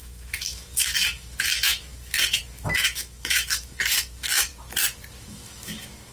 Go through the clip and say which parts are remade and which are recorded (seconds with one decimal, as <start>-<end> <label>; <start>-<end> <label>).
0.0-4.5 remade; 4.5-5.2 recorded; 5.2-6.1 remade